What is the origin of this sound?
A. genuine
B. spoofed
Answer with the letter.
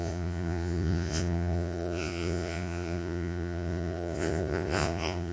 B